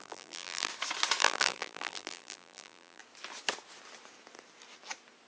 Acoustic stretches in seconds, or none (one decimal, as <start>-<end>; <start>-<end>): 0.7-1.2; 3.0-5.3